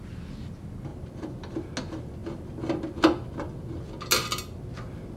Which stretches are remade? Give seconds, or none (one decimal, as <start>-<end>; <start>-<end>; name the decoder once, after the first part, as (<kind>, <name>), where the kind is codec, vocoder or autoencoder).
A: none